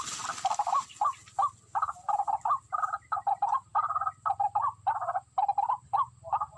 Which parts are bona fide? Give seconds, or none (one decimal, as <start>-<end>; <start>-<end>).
0.0-6.6